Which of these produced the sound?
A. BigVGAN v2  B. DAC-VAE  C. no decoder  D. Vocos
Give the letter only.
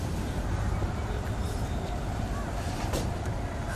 C